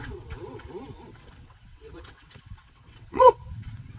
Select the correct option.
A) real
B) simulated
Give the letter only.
B